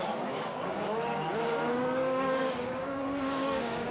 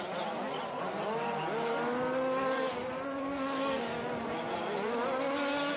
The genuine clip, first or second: second